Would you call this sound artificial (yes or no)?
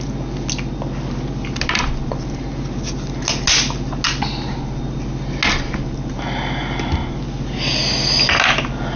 no